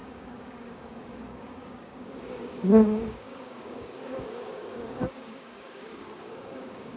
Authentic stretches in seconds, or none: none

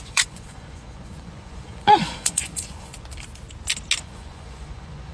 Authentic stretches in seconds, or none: 2.9-4.0

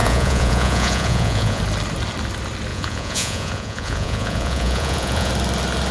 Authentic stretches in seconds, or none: 1.6-2.7; 5.3-5.9